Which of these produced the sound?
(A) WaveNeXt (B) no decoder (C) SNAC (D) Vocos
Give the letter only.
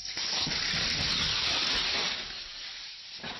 B